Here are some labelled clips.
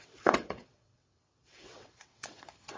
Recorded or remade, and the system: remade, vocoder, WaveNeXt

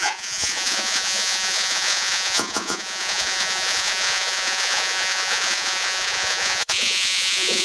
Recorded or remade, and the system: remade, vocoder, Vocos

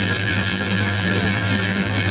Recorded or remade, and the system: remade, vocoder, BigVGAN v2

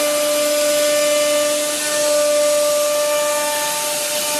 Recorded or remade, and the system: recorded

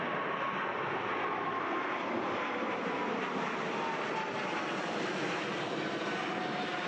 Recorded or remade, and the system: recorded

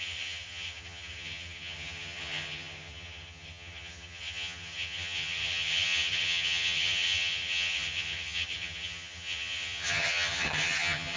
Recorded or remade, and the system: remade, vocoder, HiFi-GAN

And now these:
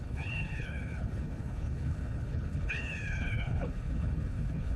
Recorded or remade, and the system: remade, codec, HILCodec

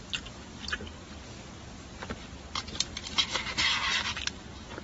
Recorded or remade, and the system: recorded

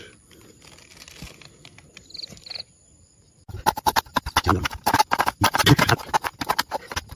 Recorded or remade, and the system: recorded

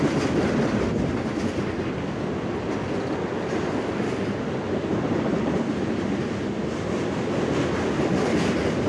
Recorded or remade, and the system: recorded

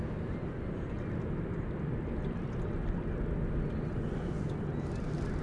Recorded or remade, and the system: recorded